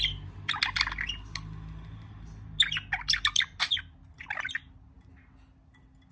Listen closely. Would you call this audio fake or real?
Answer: real